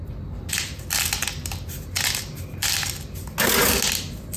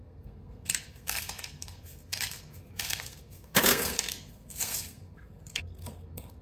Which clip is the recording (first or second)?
first